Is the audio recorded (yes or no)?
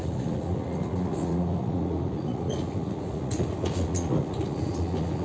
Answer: no